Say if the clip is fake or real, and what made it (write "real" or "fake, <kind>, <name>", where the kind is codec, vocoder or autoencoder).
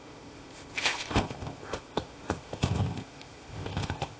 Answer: fake, codec, ZipCodec